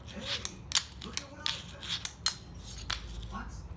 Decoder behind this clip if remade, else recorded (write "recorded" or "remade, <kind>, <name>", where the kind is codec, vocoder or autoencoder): recorded